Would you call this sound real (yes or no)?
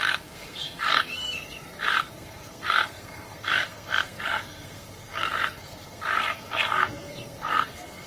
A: no